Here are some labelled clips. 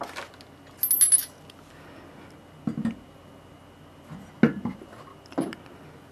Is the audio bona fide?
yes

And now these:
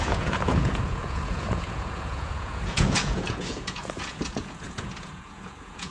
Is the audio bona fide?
no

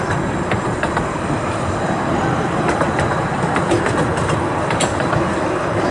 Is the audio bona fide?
yes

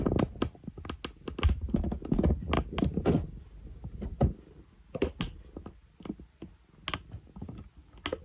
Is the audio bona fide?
yes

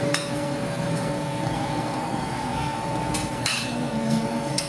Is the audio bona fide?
no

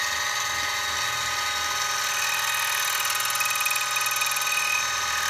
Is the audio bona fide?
yes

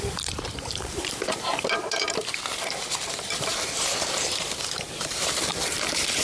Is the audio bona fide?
no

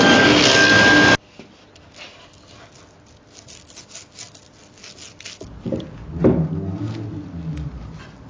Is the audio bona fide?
yes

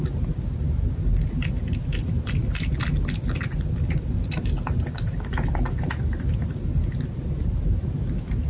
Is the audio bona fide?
yes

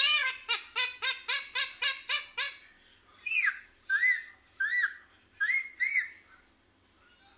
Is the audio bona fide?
yes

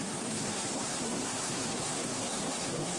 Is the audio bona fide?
no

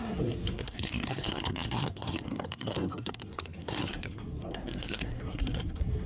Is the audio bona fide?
no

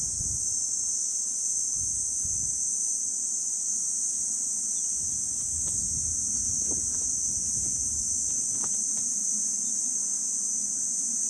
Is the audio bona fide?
yes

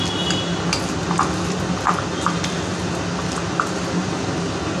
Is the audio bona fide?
yes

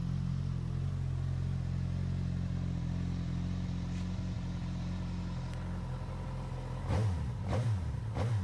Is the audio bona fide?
yes